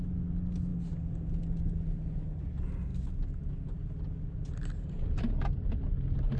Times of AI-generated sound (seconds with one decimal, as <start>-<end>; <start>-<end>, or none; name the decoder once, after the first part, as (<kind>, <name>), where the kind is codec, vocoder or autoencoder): none